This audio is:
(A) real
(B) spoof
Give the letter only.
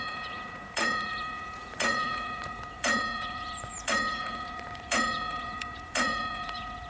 B